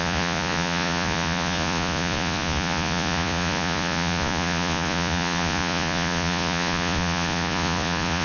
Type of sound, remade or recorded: remade